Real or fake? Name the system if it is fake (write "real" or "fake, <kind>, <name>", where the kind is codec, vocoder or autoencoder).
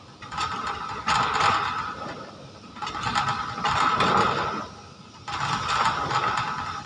real